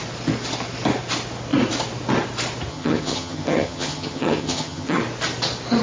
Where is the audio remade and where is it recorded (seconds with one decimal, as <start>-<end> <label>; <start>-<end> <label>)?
0.0-2.7 recorded; 2.7-5.0 remade; 5.0-5.8 recorded